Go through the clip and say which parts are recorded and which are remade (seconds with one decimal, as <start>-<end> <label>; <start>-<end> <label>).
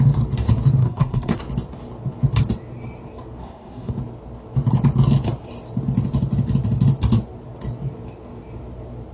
0.0-0.8 recorded; 0.8-1.4 remade; 1.4-3.4 recorded; 3.4-3.9 remade; 3.9-9.1 recorded